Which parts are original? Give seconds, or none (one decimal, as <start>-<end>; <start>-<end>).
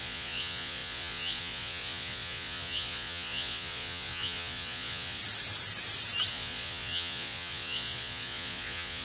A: 5.2-6.3